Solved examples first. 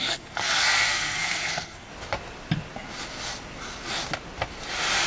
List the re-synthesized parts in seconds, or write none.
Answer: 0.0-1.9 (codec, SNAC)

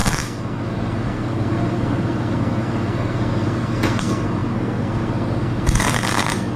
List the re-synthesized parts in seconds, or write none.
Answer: 0.0-6.6 (codec, SNAC)

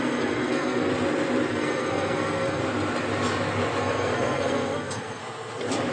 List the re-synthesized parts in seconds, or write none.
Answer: 0.0-0.9 (codec, SNAC); 1.5-2.6; 3.8-5.2

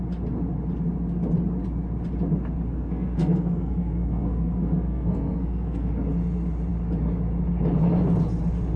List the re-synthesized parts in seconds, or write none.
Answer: 2.7-5.9 (codec, SNAC)

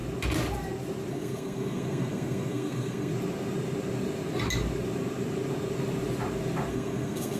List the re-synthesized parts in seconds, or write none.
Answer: 1.1-3.1 (codec, SNAC); 6.7-7.4

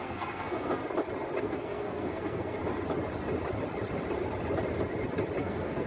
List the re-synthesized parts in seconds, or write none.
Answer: 0.0-0.8 (codec, SNAC); 1.4-2.6; 5.4-5.9